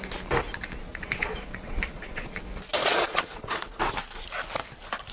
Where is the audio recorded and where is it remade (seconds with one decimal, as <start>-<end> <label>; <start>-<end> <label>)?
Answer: 0.0-0.9 recorded; 0.9-2.4 remade; 2.4-2.8 recorded; 2.8-3.8 remade; 3.8-5.1 recorded